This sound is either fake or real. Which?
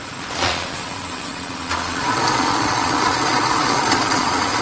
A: fake